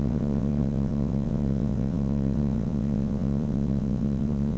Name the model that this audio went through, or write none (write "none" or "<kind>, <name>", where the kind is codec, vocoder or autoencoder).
vocoder, WaveNeXt